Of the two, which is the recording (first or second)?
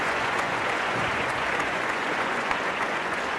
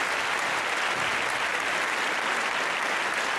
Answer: second